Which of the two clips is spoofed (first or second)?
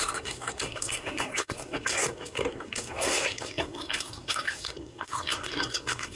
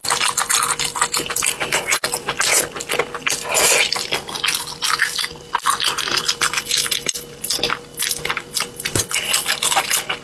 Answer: first